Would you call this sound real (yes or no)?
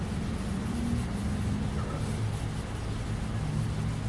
yes